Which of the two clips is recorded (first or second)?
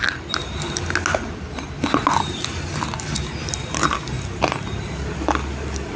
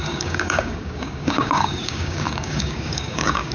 first